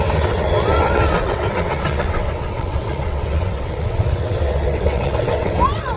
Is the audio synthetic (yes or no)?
yes